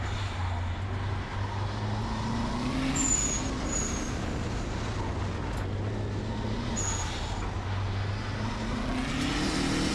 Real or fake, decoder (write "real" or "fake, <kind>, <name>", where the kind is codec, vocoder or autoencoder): real